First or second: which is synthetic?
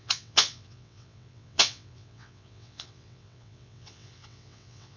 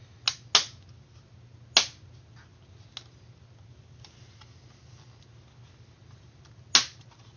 first